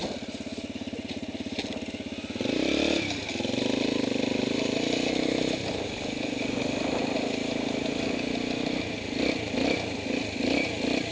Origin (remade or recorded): recorded